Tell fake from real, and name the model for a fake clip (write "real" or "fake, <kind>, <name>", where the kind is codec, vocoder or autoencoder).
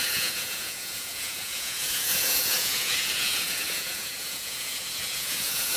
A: fake, vocoder, Vocos